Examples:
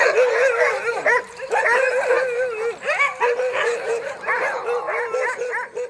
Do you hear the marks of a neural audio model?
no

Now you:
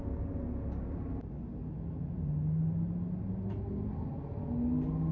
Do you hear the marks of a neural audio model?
no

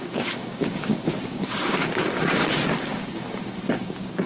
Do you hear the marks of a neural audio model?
yes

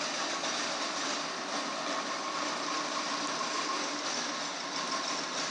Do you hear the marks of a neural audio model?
no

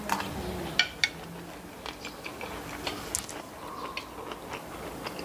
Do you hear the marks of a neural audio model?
no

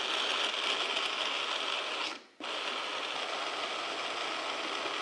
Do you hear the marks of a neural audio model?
no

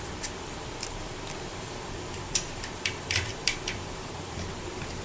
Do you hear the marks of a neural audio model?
yes